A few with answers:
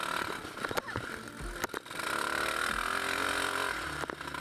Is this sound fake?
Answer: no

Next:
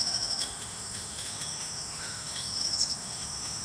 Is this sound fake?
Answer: yes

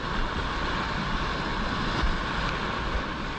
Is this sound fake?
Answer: no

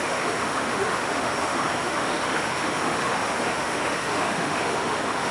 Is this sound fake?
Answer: yes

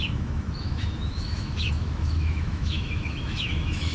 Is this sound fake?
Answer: yes